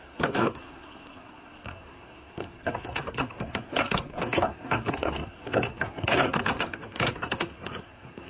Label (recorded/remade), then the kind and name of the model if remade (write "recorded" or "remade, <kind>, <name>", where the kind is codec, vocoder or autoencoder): remade, codec, SNAC